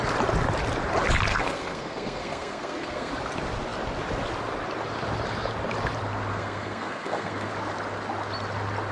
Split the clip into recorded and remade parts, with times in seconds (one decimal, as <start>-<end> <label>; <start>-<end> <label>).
0.0-1.3 recorded; 1.3-3.1 remade; 3.1-6.3 recorded; 6.3-7.5 remade; 7.5-8.9 recorded